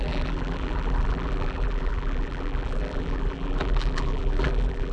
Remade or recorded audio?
remade